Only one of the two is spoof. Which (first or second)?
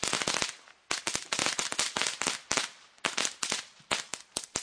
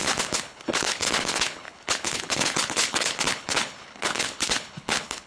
second